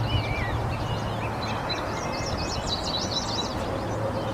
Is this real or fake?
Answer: real